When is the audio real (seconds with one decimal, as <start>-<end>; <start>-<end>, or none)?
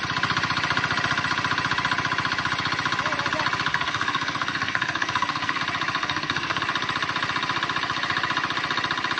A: 0.0-3.7; 5.6-6.0; 6.6-9.2